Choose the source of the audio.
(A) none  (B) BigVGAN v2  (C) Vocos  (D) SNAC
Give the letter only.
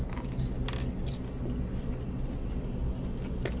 A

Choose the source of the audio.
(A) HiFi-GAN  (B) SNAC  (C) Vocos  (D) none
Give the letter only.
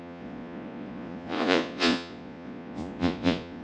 C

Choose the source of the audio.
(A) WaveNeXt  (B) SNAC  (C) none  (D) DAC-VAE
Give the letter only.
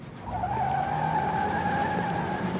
C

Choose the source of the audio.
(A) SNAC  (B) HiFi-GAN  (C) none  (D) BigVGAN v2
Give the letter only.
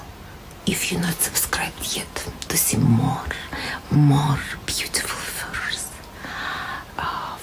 C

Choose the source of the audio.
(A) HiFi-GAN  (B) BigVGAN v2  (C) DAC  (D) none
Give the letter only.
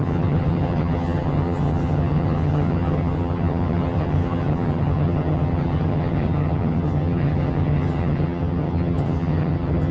A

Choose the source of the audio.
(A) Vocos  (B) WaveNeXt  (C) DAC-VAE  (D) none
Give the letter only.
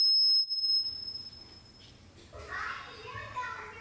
D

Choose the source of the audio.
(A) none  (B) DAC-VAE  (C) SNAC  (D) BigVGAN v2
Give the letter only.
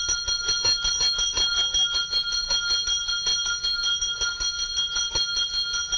A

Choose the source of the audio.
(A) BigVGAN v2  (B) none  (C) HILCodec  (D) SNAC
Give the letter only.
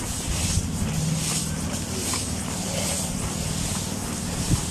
B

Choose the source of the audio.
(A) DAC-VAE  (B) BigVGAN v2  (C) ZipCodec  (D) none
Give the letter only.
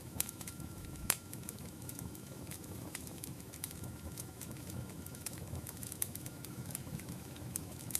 A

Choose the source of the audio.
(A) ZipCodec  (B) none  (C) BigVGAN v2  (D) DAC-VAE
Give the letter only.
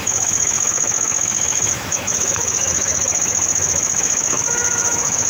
D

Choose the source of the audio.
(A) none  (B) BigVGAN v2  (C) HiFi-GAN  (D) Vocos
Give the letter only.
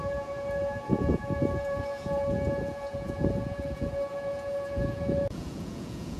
D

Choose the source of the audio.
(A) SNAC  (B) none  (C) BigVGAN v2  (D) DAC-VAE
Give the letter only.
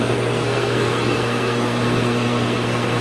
A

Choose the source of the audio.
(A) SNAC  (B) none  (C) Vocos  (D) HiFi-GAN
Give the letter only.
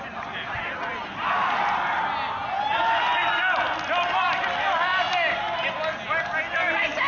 B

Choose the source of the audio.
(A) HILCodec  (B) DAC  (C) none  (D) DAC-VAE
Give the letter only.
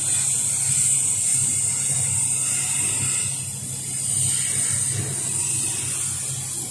C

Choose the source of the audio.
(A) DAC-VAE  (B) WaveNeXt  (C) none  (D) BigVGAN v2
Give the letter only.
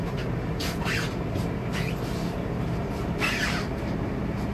D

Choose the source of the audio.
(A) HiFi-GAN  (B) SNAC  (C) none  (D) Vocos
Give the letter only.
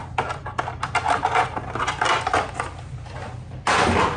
C